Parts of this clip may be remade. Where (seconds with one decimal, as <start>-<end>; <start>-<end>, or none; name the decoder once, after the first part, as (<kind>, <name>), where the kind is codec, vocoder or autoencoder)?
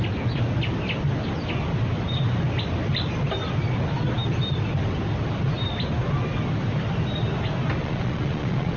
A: 7.8-8.8 (vocoder, Vocos)